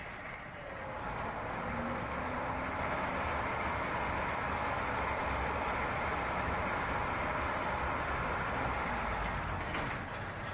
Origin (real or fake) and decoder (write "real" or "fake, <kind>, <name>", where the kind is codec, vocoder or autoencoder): real